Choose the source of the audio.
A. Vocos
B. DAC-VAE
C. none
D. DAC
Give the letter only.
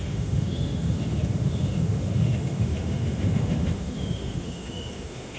B